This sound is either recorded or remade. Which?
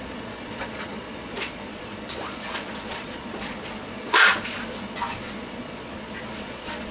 remade